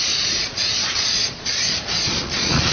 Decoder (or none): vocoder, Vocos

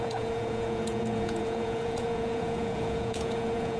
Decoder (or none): vocoder, Vocos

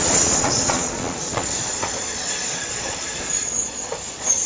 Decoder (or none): vocoder, Vocos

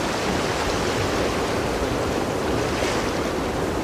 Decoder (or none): none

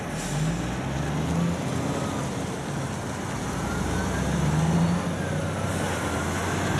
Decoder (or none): none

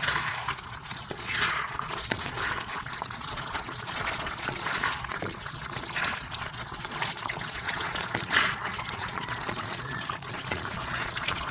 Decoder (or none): vocoder, Vocos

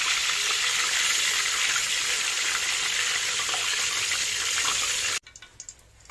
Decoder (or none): none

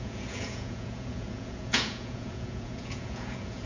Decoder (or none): vocoder, Vocos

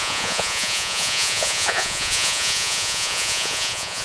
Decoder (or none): vocoder, Vocos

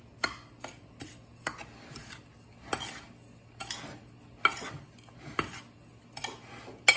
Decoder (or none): none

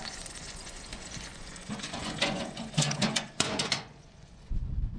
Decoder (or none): vocoder, Vocos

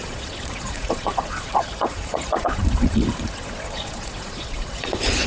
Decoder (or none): vocoder, Vocos